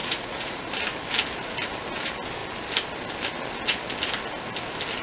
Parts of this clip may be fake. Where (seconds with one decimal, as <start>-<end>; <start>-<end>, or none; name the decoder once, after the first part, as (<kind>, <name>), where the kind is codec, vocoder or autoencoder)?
0.0-0.7 (vocoder, Vocos)